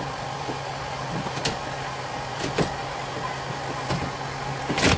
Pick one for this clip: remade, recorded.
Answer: recorded